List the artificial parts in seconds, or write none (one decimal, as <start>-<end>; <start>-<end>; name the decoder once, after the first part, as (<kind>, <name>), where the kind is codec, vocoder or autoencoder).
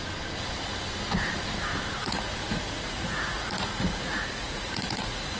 2.0-5.4 (vocoder, Vocos)